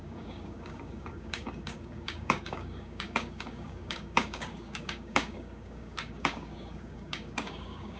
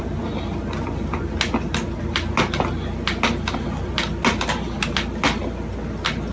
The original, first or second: second